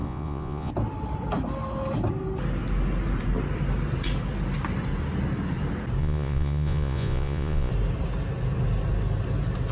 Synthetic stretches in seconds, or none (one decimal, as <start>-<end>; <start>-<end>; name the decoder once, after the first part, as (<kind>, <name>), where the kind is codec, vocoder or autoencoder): 0.0-0.7 (vocoder, Vocos); 6.0-7.7